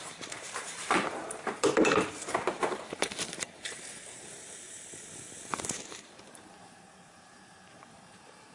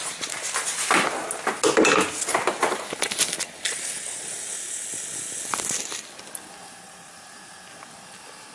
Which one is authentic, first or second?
second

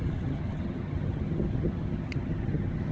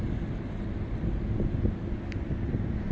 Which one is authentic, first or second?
second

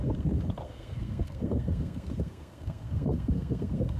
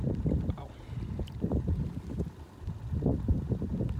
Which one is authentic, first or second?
second